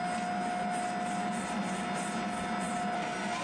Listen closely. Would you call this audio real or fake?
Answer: real